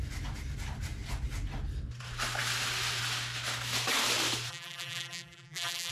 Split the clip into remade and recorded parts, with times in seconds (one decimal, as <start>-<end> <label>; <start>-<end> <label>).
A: 0.0-4.5 recorded; 4.5-5.9 remade